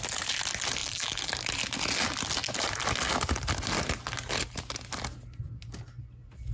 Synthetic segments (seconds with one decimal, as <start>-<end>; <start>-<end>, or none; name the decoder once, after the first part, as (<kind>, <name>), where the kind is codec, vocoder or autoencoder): 0.8-1.3 (vocoder, BigVGAN v2)